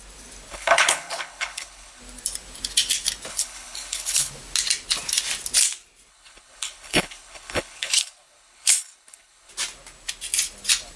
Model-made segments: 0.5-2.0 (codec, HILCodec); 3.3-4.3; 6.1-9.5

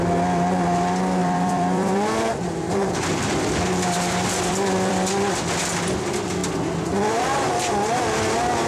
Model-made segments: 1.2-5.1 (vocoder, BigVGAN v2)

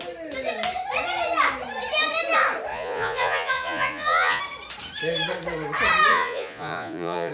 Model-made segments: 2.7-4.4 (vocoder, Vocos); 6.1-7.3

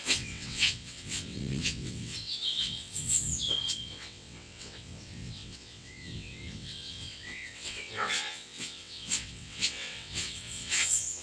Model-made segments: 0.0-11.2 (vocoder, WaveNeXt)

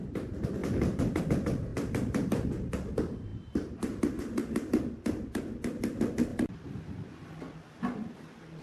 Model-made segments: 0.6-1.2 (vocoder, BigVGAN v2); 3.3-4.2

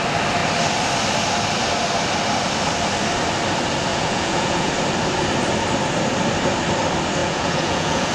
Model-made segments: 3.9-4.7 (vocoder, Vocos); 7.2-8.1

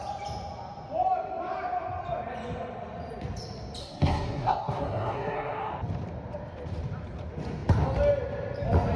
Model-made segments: 3.8-5.7 (codec, SNAC)

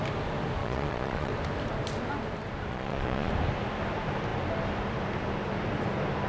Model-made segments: 0.6-1.3 (vocoder, Vocos); 2.7-3.3